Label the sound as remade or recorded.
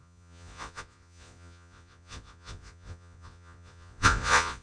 remade